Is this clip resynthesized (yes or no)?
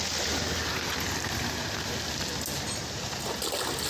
no